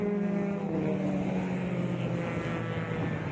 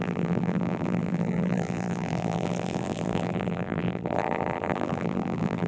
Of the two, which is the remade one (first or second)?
second